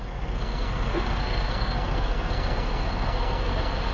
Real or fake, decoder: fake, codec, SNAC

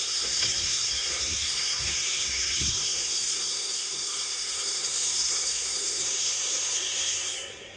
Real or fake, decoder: fake, codec, SNAC